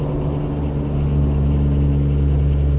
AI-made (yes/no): no